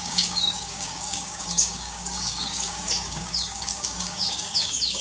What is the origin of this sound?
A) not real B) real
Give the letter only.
A